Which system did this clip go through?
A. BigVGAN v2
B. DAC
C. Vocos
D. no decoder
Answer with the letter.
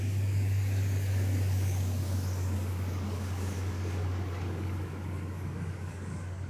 B